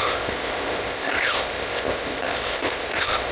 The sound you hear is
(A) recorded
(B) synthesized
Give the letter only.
B